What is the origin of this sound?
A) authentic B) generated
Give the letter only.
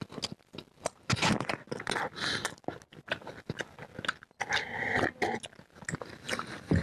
A